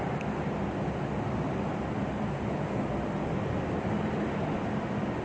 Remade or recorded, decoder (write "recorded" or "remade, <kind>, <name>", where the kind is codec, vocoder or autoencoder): recorded